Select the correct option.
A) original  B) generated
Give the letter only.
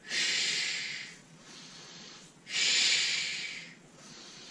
B